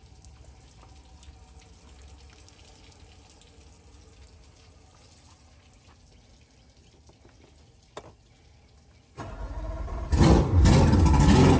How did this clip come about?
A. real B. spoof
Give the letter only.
A